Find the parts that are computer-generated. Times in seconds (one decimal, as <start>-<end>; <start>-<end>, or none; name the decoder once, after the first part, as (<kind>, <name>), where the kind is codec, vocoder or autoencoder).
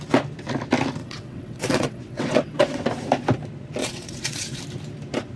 1.0-2.8 (vocoder, WaveNeXt); 3.8-4.6